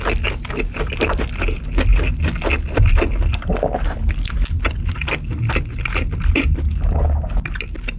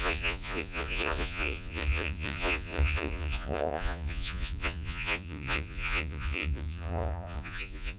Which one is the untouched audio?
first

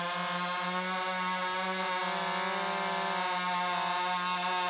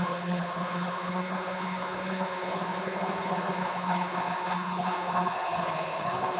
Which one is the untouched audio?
first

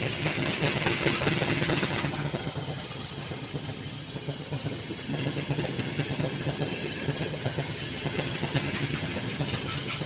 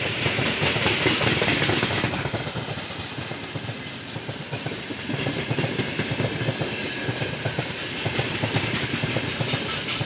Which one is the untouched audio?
second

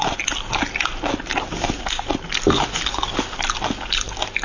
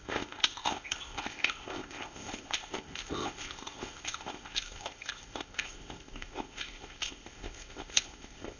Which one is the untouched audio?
first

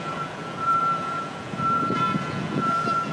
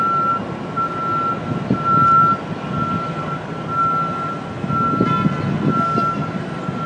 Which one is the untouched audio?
second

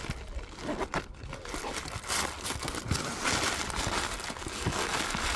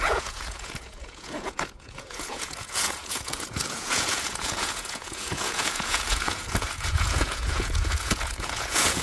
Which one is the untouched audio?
first